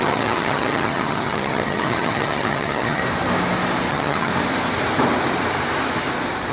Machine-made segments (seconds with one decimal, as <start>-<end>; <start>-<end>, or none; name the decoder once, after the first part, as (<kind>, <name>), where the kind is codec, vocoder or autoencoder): 0.0-3.0 (vocoder, HiFi-GAN); 3.9-4.3